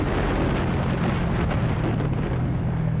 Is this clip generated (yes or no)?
no